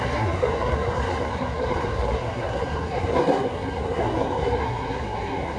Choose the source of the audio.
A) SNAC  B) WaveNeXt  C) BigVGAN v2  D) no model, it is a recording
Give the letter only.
A